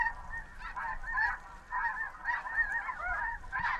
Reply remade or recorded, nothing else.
recorded